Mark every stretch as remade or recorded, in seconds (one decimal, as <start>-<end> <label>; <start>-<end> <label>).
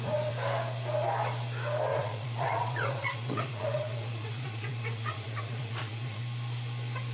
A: 0.0-1.9 recorded; 1.9-6.2 remade; 6.2-7.1 recorded